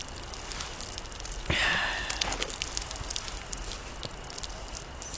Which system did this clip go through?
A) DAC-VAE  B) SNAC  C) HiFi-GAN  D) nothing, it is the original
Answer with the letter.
D